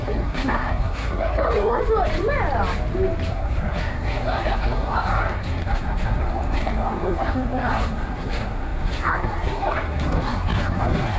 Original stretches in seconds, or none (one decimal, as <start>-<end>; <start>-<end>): 1.8-3.3